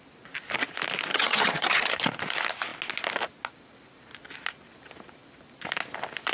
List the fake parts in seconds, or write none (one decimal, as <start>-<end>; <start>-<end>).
1.1-1.9